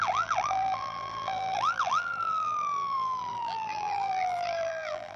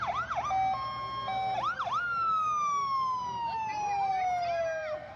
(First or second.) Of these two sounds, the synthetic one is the first